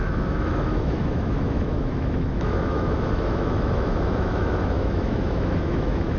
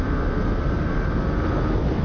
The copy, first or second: first